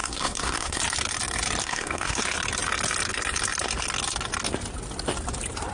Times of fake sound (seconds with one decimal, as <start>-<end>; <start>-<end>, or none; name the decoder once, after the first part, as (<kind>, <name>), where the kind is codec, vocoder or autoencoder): 0.0-0.8 (codec, SNAC); 1.6-2.2